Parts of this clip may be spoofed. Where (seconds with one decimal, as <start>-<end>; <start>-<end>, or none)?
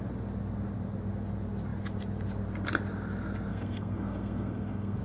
3.5-5.0